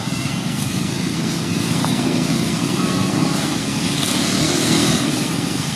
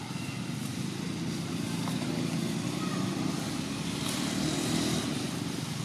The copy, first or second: first